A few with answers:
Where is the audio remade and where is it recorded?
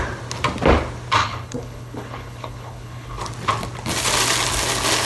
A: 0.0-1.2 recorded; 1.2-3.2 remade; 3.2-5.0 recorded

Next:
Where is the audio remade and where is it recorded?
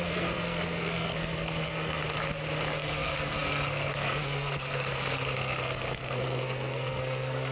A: 0.0-2.0 remade; 2.0-2.7 recorded; 2.7-7.5 remade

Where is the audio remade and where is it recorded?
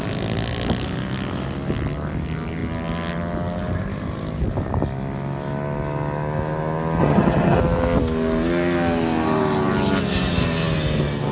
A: 0.0-7.0 recorded; 7.0-7.6 remade; 7.6-11.3 recorded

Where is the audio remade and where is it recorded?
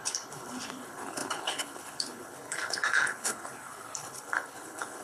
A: 0.0-5.0 remade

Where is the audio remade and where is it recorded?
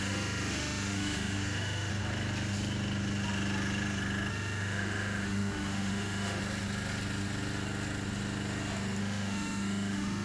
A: 0.0-1.9 remade; 1.9-4.3 recorded; 4.3-6.4 remade; 6.4-9.0 recorded; 9.0-10.2 remade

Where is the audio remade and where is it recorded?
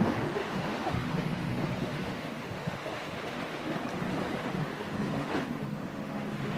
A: 0.0-3.8 remade; 3.8-4.4 recorded; 4.4-6.6 remade